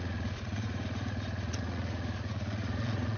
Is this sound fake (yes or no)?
yes